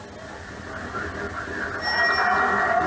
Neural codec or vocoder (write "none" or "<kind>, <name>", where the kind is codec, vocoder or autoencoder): none